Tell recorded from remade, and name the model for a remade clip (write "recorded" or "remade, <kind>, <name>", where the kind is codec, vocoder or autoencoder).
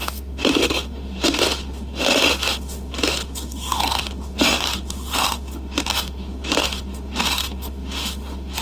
remade, autoencoder, DAC-VAE